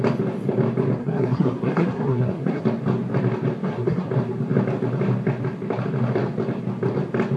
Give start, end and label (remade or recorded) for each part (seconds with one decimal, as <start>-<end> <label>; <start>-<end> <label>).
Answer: 0.0-1.0 recorded; 1.0-2.6 remade; 2.6-3.6 recorded; 3.6-4.1 remade; 4.1-7.4 recorded